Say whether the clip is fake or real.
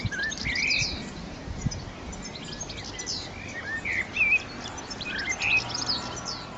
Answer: real